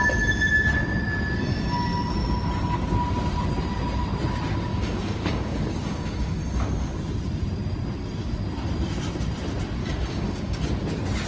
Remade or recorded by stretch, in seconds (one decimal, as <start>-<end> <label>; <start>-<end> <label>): 0.0-4.7 recorded; 4.7-6.4 remade; 6.4-9.8 recorded; 9.8-10.6 remade; 10.6-11.3 recorded